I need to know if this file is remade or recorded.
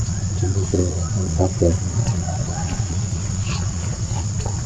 remade